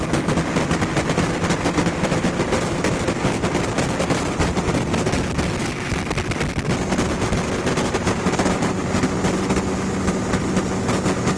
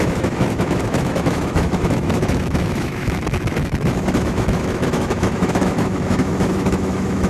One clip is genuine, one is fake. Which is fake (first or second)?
second